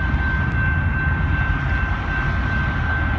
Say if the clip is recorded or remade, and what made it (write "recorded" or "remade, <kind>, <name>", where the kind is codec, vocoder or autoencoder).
recorded